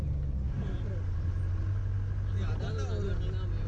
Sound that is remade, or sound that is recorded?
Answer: recorded